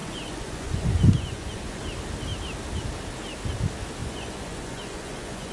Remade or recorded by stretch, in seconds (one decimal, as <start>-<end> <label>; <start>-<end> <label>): 0.0-1.8 remade; 1.8-4.0 recorded; 4.0-5.5 remade

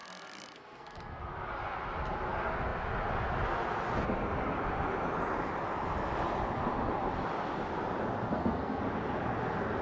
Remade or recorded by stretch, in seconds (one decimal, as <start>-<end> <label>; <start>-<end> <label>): 0.0-1.2 remade; 1.2-8.3 recorded; 8.3-8.8 remade; 8.8-9.8 recorded

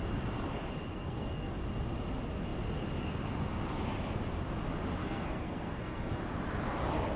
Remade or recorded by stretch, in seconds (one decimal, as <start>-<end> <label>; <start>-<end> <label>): 0.0-0.9 recorded; 0.9-1.5 remade; 1.5-5.0 recorded; 5.0-6.2 remade; 6.2-7.2 recorded

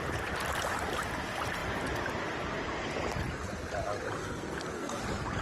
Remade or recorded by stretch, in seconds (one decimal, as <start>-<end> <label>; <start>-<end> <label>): 0.0-4.2 recorded; 4.2-5.0 remade; 5.0-5.4 recorded

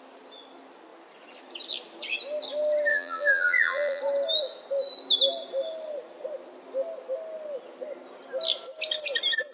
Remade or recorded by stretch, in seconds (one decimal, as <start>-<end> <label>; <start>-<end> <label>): 0.0-2.9 recorded; 2.9-4.0 remade; 4.0-9.5 recorded